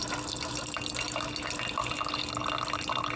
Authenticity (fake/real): real